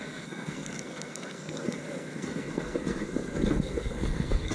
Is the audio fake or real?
fake